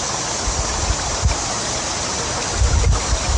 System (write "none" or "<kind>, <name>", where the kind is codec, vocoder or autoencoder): none